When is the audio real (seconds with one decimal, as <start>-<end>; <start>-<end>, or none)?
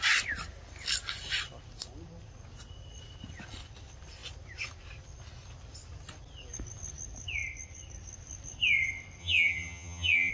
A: 0.0-9.2